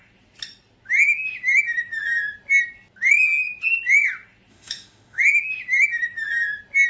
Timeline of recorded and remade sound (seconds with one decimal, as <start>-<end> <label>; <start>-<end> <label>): 0.0-4.5 recorded; 4.5-5.2 remade; 5.2-6.9 recorded